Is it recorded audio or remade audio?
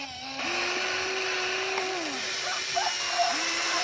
recorded